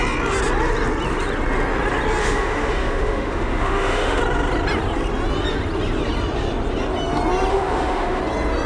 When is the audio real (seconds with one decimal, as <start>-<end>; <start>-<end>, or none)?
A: 0.0-2.2; 4.2-7.5; 8.2-8.7